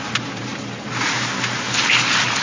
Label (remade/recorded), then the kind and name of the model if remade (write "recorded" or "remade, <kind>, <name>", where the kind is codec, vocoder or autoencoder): remade, vocoder, BigVGAN v2